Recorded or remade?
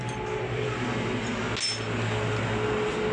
recorded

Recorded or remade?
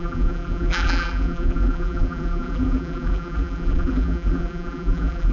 remade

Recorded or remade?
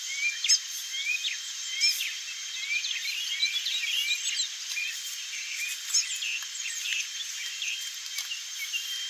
recorded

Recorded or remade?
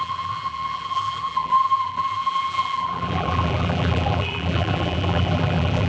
remade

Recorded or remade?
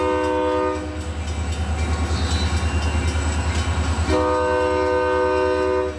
recorded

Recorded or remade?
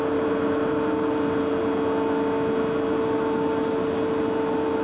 recorded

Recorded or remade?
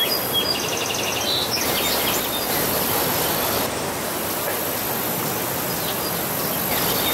recorded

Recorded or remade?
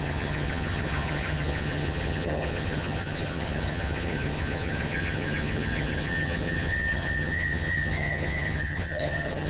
remade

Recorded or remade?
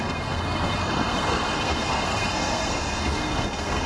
remade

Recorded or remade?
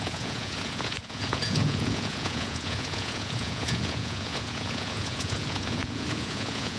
remade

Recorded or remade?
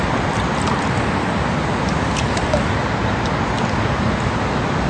recorded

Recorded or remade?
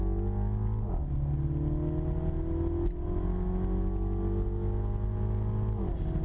recorded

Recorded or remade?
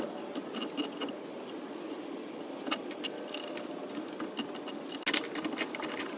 recorded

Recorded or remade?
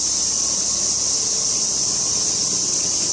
recorded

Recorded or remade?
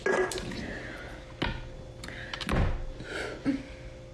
recorded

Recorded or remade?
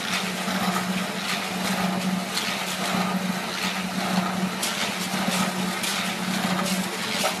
recorded